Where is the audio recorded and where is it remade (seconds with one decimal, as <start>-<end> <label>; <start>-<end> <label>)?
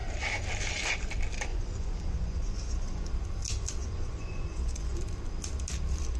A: 0.0-1.5 recorded; 1.5-3.1 remade; 3.1-3.8 recorded; 3.8-5.0 remade; 5.0-6.2 recorded